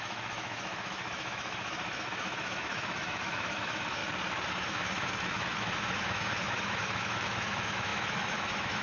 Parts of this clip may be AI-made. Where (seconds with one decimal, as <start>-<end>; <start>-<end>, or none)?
0.0-4.0; 4.5-8.8